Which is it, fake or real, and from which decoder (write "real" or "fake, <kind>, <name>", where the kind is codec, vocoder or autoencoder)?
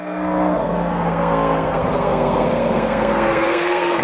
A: fake, codec, SNAC